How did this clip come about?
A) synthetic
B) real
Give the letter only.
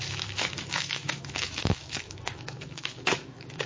A